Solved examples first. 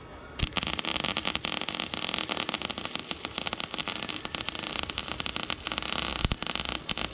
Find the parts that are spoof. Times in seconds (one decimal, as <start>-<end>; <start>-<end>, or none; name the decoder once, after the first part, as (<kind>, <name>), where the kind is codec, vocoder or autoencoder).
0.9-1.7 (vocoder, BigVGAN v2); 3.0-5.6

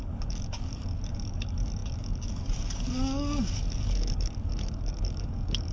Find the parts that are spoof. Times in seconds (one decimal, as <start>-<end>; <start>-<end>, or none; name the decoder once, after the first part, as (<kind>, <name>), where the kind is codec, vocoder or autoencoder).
0.0-5.7 (codec, DAC)

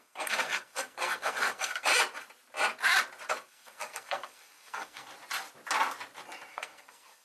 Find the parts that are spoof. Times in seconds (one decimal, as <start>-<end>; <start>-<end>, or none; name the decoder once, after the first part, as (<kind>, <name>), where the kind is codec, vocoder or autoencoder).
0.0-1.9 (codec, SNAC); 3.3-5.1; 6.5-7.2